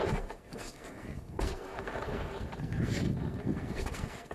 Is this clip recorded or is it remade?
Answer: remade